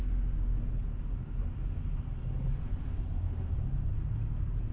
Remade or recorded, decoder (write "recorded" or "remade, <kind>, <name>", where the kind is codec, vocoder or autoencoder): recorded